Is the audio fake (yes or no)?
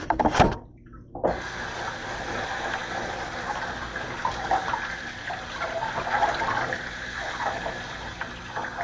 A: no